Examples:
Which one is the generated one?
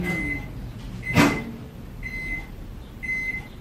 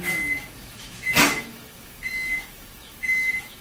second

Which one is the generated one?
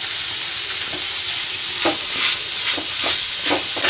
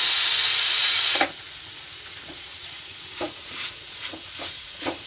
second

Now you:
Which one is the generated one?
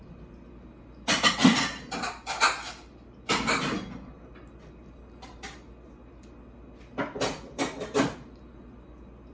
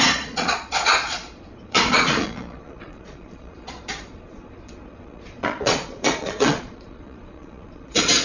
second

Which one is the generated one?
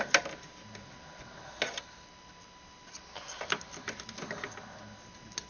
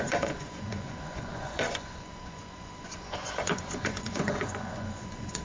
second